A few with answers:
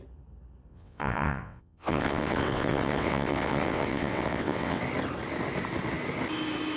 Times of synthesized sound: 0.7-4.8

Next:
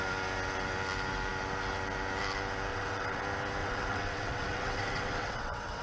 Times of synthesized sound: 2.7-3.2; 3.6-5.8

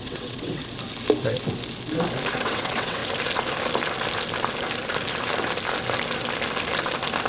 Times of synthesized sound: 0.0-0.6; 2.3-3.0

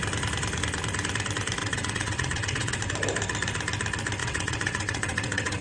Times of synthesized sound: 1.6-2.8; 4.2-5.6

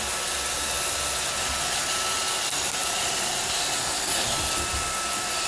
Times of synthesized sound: none

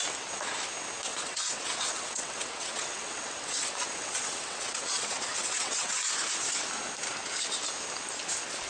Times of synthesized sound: 1.1-5.9

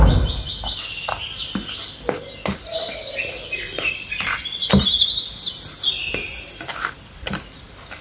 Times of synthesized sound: none